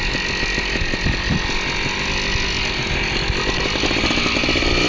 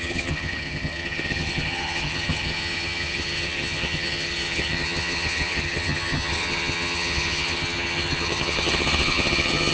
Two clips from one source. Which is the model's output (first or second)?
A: second